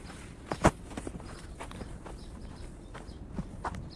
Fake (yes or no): no